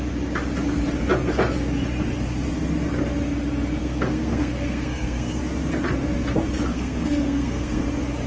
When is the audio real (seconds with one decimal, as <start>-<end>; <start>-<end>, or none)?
0.0-3.8; 5.4-6.7; 7.8-8.3